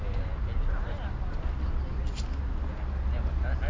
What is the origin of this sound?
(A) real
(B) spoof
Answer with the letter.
A